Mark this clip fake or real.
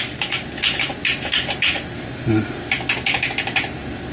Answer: real